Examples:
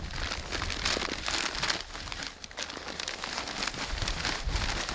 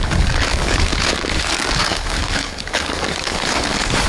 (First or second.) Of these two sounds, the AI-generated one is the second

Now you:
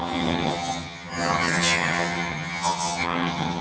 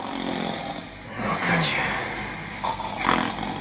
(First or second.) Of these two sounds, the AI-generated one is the first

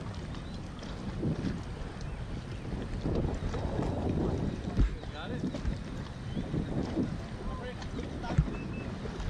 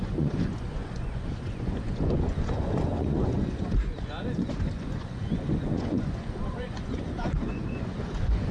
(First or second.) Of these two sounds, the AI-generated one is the second